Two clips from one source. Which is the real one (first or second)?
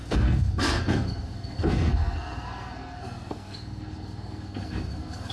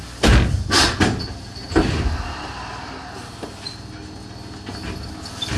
second